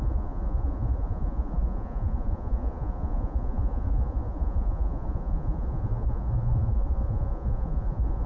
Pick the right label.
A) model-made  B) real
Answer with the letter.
A